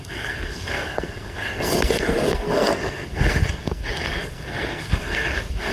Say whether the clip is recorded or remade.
remade